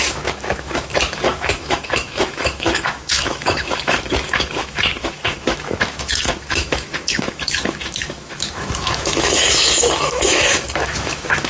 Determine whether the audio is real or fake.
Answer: fake